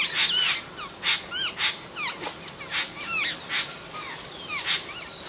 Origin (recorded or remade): recorded